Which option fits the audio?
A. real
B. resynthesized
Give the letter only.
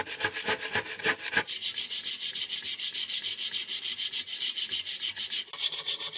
A